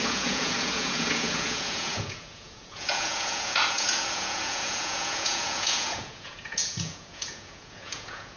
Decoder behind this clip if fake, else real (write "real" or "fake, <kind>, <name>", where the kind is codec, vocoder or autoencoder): fake, vocoder, Vocos